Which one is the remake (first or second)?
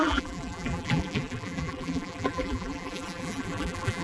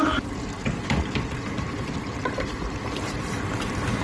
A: first